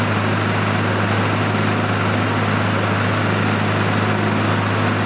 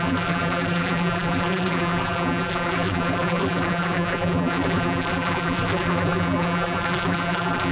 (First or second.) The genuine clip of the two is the first